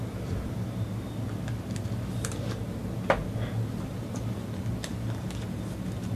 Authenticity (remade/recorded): recorded